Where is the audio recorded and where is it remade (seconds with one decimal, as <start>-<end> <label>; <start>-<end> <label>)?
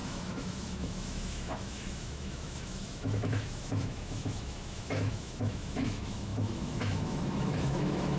0.0-8.2 remade